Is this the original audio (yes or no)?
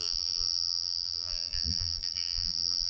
no